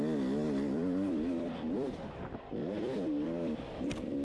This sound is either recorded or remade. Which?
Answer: remade